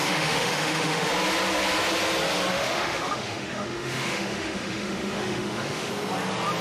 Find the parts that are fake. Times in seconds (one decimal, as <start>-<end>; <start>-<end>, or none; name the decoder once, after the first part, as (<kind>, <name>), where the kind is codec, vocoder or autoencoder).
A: 0.0-1.1 (autoencoder, DAC-VAE); 2.5-5.9